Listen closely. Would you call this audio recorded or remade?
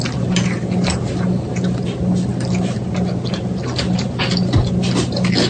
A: recorded